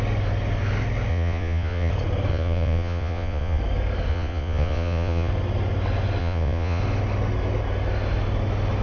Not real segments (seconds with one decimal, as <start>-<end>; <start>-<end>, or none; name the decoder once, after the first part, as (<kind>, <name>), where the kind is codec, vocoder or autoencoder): 1.1-1.9 (vocoder, Vocos); 2.3-3.6; 4.1-5.3; 6.2-6.8